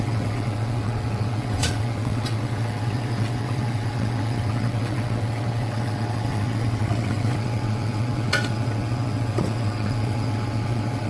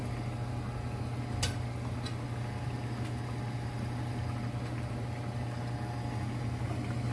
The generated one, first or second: first